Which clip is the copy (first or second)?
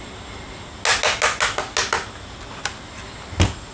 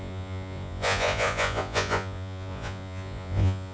second